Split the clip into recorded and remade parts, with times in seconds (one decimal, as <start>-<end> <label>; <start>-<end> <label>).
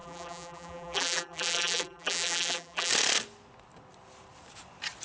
0.0-2.9 remade; 2.9-5.0 recorded